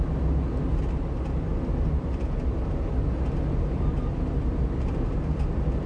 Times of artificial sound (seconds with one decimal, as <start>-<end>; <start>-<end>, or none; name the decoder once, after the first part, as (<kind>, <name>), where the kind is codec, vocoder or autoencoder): none